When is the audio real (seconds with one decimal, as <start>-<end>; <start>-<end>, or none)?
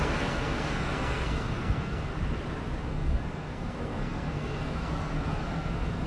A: 2.1-2.8